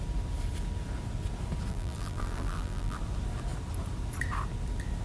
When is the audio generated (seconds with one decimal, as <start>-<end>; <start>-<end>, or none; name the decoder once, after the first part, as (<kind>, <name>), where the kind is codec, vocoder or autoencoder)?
1.7-3.0 (vocoder, BigVGAN v2)